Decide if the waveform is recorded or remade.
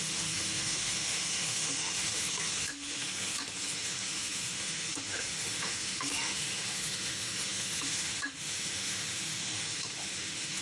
remade